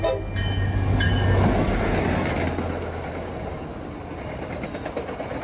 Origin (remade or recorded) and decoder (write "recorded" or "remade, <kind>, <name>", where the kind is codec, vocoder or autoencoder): recorded